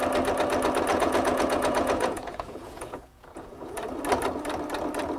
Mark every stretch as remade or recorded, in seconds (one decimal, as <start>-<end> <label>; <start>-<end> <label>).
0.0-0.9 recorded; 0.9-3.8 remade; 3.8-5.2 recorded